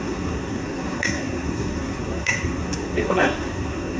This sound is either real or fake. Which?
fake